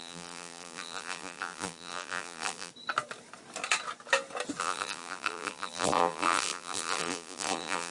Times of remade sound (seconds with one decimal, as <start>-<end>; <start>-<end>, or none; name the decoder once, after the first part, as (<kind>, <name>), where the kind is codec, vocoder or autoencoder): 0.0-2.7 (vocoder, BigVGAN v2); 4.6-7.9